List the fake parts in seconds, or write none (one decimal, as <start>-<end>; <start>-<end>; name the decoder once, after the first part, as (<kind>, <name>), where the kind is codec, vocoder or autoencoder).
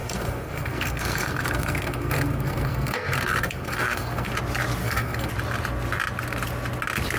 0.0-4.3 (codec, SNAC); 4.8-5.3